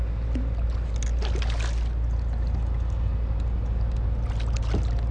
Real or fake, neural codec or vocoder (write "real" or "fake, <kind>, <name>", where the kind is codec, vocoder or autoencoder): real